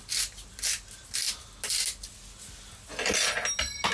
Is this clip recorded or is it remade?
recorded